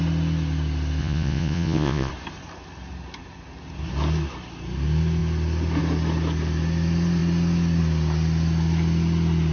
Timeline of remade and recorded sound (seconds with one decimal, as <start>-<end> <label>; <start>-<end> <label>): 0.0-1.0 recorded; 1.0-2.1 remade; 2.1-9.5 recorded